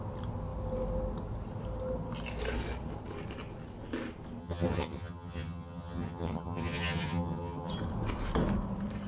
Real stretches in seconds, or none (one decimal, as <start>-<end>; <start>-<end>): 0.0-4.4; 7.7-9.1